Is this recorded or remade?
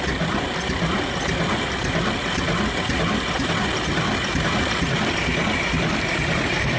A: recorded